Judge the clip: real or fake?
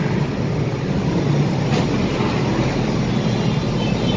real